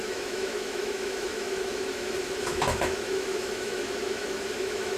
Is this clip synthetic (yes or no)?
yes